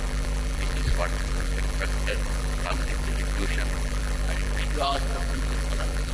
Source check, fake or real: fake